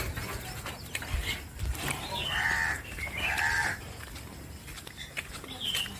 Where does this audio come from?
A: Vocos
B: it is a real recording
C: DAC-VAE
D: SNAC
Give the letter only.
B